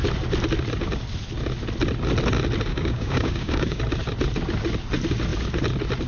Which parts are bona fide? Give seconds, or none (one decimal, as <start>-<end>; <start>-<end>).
0.0-2.7; 3.8-6.1